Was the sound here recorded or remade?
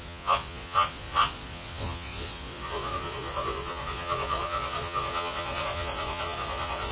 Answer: remade